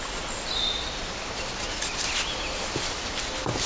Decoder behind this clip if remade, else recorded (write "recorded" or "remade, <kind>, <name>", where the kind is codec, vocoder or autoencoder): recorded